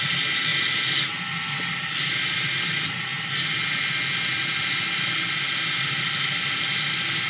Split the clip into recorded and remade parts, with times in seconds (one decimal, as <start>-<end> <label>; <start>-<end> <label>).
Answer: 0.0-7.3 recorded